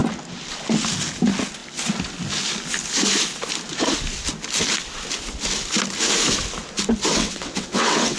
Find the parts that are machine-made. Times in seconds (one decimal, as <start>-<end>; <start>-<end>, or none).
7.1-8.2